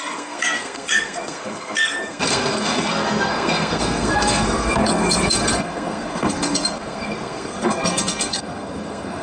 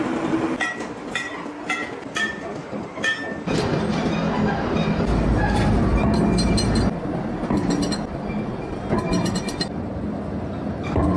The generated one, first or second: first